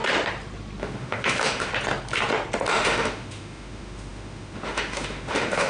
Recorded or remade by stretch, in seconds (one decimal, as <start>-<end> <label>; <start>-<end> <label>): 0.0-0.8 recorded; 0.8-1.7 remade; 1.7-2.7 recorded; 2.7-5.7 remade